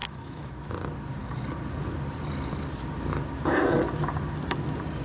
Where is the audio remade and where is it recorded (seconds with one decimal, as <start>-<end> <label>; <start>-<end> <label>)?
0.0-0.7 remade; 0.7-5.0 recorded